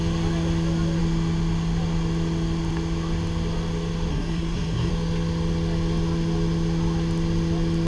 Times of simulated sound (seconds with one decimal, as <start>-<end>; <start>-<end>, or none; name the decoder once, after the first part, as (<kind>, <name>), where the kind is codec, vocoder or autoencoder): 4.1-4.9 (codec, SNAC)